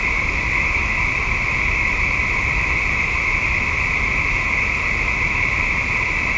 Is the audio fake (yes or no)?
no